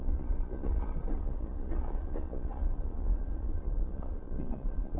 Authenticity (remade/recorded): remade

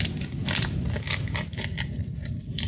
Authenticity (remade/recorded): recorded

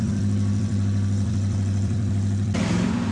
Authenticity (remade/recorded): remade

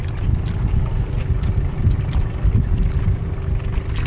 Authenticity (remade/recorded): recorded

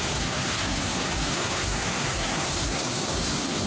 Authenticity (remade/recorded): remade